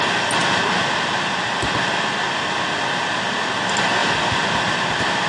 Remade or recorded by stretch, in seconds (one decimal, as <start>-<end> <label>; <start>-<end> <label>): 0.0-5.3 recorded